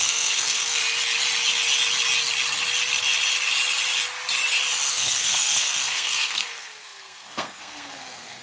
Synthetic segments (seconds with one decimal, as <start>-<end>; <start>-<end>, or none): 0.0-0.8; 4.9-8.4